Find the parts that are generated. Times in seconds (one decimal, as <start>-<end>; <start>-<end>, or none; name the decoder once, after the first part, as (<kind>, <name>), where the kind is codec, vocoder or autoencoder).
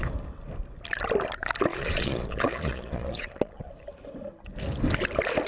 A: 1.7-3.7 (vocoder, Vocos)